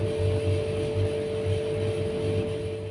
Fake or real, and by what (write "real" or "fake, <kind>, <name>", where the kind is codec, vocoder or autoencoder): real